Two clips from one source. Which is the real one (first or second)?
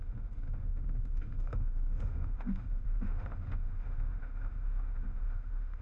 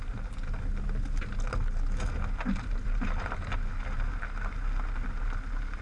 second